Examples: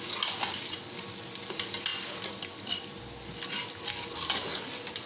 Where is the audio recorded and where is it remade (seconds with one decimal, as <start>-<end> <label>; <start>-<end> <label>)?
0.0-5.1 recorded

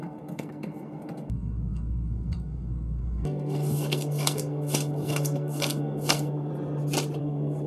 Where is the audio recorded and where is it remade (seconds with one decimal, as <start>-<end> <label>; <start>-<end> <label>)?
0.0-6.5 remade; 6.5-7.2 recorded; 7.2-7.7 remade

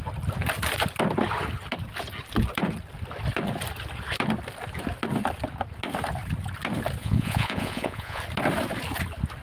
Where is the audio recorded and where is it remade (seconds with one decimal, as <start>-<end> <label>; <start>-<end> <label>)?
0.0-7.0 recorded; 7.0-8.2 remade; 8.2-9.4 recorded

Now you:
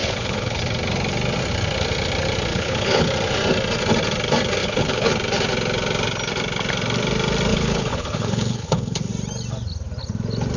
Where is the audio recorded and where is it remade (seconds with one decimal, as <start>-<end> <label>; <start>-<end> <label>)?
0.0-0.6 remade; 0.6-2.5 recorded; 2.5-3.1 remade; 3.1-4.6 recorded; 4.6-5.1 remade; 5.1-7.5 recorded; 7.5-9.1 remade; 9.1-10.6 recorded

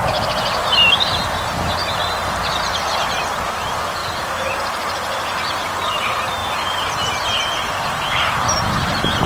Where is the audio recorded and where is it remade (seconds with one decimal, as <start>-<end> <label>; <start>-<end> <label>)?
0.0-2.2 recorded; 2.2-3.0 remade; 3.0-9.3 recorded

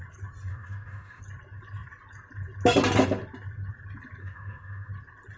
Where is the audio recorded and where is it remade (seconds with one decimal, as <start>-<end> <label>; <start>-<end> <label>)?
0.0-0.5 recorded; 0.5-1.2 remade; 1.2-4.2 recorded; 4.2-4.9 remade; 4.9-5.4 recorded

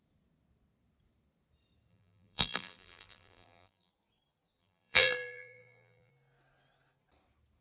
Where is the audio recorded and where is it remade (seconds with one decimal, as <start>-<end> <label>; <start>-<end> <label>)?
0.0-1.9 recorded; 1.9-3.9 remade; 3.9-4.6 recorded; 4.6-6.1 remade; 6.1-7.6 recorded